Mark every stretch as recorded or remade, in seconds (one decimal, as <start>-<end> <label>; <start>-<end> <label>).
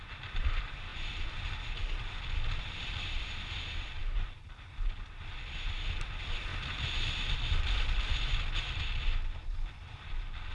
0.0-10.5 recorded